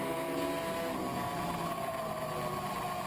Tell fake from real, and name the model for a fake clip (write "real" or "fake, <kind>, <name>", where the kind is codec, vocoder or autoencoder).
real